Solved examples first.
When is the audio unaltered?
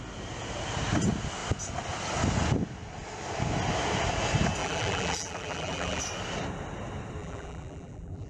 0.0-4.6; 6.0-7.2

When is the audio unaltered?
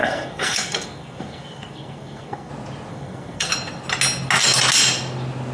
2.5-2.9; 3.5-5.5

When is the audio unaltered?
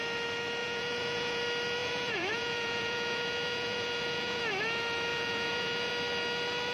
0.0-0.6; 1.4-1.8; 4.4-5.1; 5.9-6.7